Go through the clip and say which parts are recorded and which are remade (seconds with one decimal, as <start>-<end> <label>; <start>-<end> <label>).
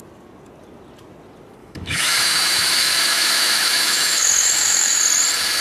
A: 0.0-1.6 recorded; 1.6-5.0 remade; 5.0-5.6 recorded